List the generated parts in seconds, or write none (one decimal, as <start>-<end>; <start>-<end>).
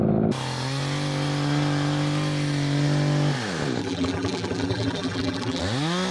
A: 3.8-5.6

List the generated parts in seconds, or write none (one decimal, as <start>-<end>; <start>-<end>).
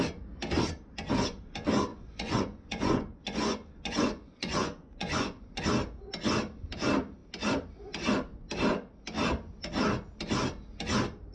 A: 1.9-5.6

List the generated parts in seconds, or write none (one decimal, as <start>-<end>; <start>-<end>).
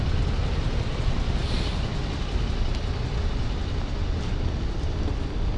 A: none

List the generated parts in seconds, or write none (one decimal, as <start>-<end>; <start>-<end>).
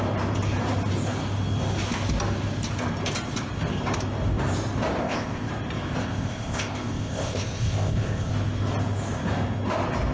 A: 5.0-5.5; 6.0-8.3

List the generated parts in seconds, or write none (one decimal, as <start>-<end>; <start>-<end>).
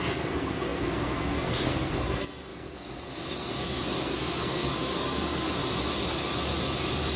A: 0.0-5.6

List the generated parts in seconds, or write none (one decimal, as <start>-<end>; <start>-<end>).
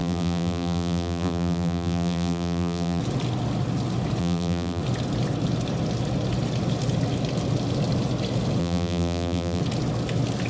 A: 0.0-3.0; 4.2-4.8; 8.6-9.6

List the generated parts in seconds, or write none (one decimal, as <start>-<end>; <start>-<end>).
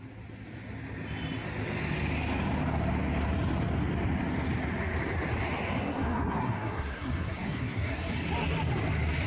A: 5.8-8.1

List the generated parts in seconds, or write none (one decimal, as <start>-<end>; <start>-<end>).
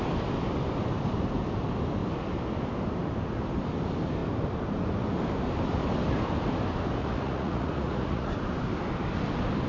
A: 7.0-8.3